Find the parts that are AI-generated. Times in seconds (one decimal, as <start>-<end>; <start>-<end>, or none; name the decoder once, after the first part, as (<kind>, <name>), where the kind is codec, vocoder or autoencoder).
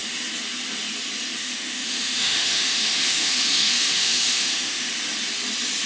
1.4-4.9 (autoencoder, DAC-VAE)